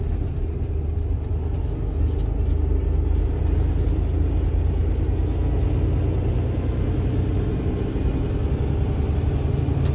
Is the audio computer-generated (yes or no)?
no